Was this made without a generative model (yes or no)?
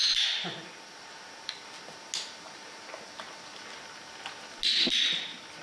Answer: yes